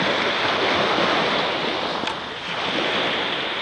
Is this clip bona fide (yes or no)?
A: yes